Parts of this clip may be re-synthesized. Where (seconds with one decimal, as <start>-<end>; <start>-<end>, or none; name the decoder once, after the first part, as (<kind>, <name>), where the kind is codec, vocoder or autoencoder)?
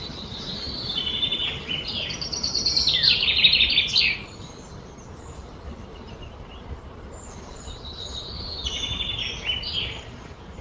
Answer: 0.0-10.6 (vocoder, BigVGAN v2)